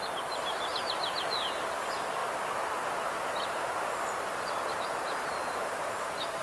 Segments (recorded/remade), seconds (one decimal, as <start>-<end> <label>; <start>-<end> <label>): 0.0-0.7 remade; 0.7-1.6 recorded; 1.6-6.4 remade